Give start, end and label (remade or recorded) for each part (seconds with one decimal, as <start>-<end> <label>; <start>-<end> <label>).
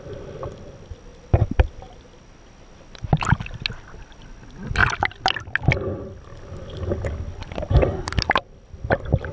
0.0-9.3 recorded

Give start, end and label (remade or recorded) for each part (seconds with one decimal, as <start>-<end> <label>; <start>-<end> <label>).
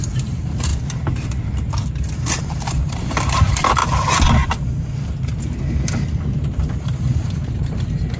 0.0-0.7 remade; 0.7-2.4 recorded; 2.4-3.8 remade; 3.8-6.8 recorded; 6.8-8.2 remade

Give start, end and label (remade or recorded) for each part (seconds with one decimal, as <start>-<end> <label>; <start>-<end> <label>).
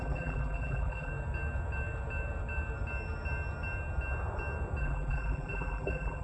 0.0-1.1 remade; 1.1-4.8 recorded; 4.8-6.2 remade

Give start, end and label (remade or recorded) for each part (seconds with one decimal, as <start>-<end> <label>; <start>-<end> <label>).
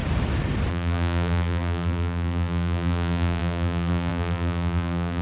0.0-0.7 recorded; 0.7-5.2 remade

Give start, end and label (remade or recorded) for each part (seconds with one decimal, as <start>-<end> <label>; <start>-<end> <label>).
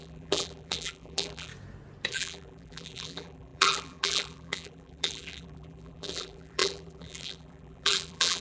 0.0-1.5 remade; 1.5-2.1 recorded; 2.1-8.4 remade